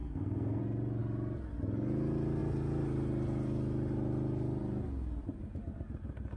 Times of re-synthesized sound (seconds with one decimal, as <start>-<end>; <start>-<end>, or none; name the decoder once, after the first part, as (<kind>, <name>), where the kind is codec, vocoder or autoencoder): 0.0-0.6 (codec, SNAC)